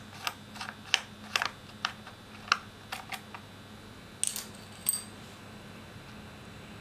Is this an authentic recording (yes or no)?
yes